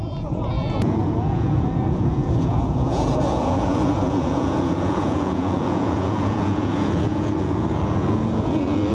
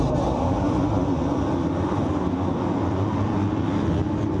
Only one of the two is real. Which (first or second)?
second